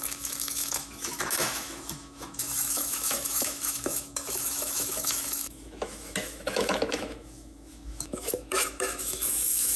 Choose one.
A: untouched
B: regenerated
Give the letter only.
B